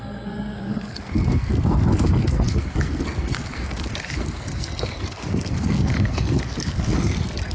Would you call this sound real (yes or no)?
no